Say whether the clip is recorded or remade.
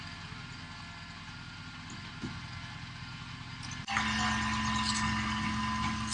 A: recorded